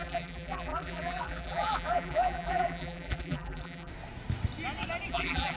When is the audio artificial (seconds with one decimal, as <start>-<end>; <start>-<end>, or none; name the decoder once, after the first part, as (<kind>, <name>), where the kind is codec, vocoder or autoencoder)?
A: 0.0-3.9 (vocoder, BigVGAN v2); 5.1-5.6